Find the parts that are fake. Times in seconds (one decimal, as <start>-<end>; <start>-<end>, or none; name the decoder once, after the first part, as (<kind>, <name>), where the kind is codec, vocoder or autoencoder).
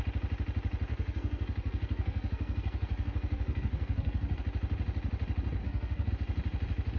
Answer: 0.9-4.4 (codec, SNAC); 5.6-6.1